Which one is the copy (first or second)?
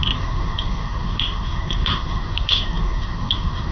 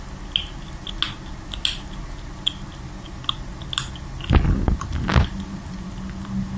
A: first